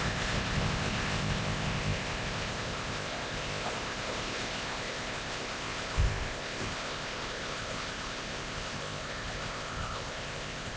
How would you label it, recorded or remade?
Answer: remade